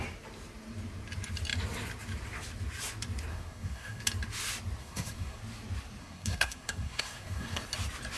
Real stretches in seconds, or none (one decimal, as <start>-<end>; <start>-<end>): 0.0-3.3; 4.0-4.8; 5.4-6.0; 7.6-8.2